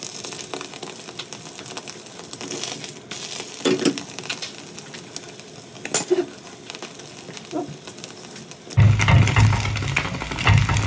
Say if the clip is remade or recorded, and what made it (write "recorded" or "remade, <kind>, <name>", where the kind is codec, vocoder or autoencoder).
recorded